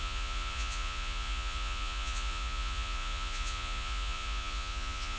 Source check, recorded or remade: remade